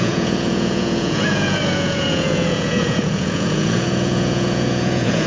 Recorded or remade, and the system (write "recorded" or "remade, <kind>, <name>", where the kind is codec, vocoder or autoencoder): remade, vocoder, Vocos